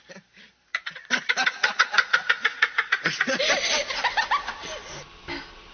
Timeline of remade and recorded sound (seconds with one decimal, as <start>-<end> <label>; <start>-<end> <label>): 0.0-0.7 recorded; 0.7-3.4 remade; 3.4-5.7 recorded